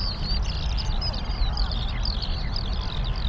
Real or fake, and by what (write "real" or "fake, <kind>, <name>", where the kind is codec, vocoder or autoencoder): real